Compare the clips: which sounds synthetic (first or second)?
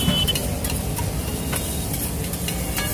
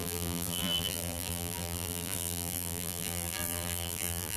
second